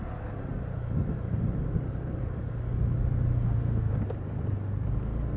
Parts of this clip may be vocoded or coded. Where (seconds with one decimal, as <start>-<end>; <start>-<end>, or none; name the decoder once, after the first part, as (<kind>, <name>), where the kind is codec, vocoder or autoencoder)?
3.3-3.9 (autoencoder, DAC-VAE)